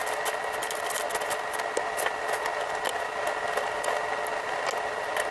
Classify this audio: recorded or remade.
recorded